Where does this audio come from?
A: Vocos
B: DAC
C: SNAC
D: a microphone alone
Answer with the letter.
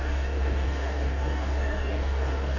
B